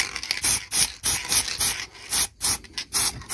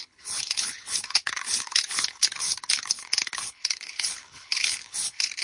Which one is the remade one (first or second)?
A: second